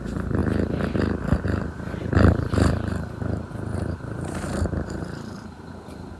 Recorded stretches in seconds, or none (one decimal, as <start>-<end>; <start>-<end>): 0.4-1.4